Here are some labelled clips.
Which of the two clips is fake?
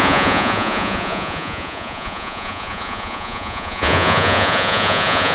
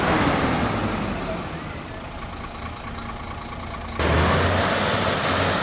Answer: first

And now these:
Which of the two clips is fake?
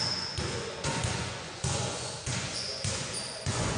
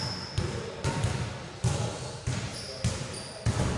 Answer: first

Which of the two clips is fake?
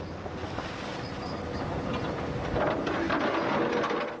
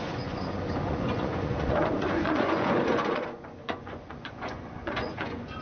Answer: second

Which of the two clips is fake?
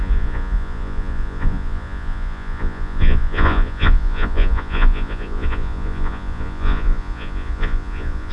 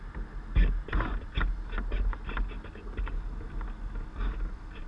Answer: first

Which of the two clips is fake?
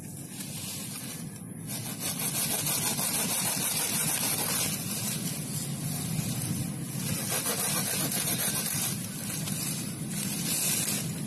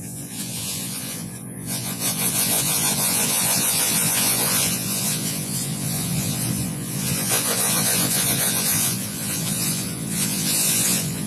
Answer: second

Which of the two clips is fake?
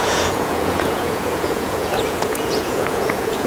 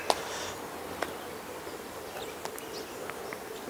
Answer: first